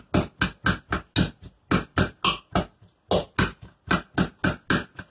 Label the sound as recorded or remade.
recorded